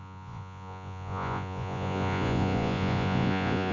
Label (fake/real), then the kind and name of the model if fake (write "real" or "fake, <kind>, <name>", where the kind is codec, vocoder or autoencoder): fake, vocoder, Vocos